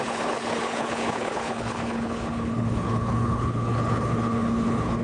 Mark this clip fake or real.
fake